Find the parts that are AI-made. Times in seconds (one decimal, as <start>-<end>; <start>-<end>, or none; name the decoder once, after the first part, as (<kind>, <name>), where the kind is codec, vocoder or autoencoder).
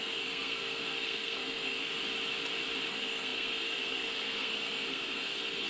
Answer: 0.0-1.9 (codec, SNAC); 2.9-5.7